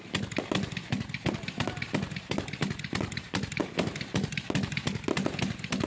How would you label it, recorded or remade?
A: recorded